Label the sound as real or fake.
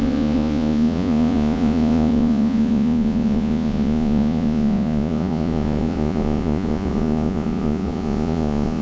fake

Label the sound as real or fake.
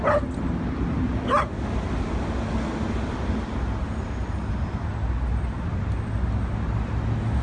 real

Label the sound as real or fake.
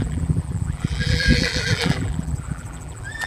fake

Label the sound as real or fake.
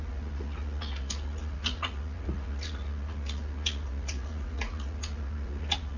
fake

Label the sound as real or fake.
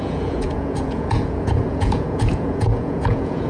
fake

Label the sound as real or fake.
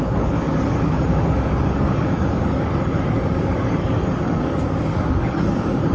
fake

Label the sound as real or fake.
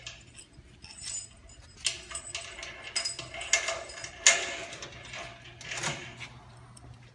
real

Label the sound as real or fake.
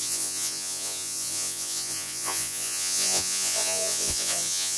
fake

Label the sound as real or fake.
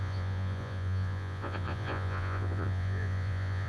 fake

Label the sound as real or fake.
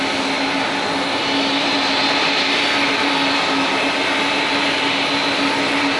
real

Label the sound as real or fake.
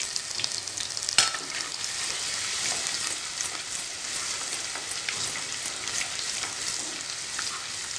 real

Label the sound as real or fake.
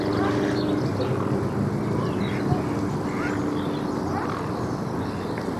real